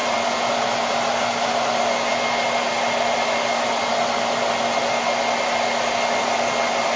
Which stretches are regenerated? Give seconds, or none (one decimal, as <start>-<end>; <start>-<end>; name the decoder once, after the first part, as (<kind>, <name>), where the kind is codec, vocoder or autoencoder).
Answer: none